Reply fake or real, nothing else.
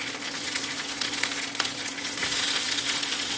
fake